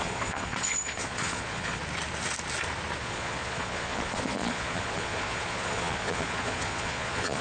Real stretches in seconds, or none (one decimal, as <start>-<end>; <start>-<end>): 1.8-3.0